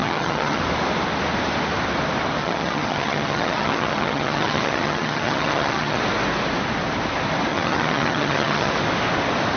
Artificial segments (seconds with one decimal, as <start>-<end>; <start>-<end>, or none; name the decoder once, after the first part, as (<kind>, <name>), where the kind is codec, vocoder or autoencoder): 0.0-0.6 (vocoder, HiFi-GAN); 2.4-6.0; 7.5-8.7